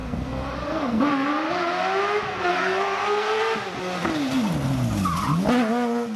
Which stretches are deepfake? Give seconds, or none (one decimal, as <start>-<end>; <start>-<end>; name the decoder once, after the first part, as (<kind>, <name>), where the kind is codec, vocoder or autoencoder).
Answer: 0.0-1.3 (codec, SNAC); 2.3-3.4